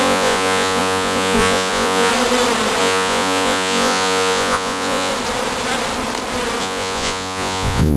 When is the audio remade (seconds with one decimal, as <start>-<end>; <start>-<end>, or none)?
0.0-2.1; 2.8-5.1; 6.6-8.0

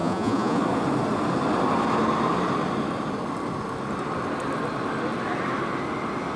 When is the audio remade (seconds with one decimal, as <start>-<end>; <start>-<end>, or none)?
0.0-0.6

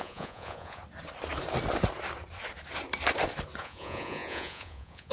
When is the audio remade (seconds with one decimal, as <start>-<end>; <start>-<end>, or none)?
0.0-0.8; 3.6-5.1